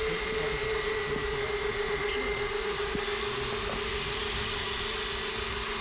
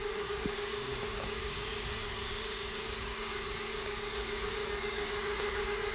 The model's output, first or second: second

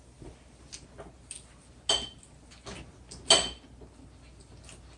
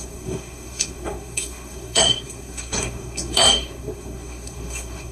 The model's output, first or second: second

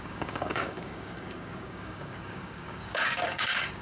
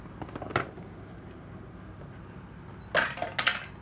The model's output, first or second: first